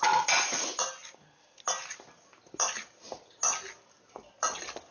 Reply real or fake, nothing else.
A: real